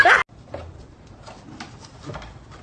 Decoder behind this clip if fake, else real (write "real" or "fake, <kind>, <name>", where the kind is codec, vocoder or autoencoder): real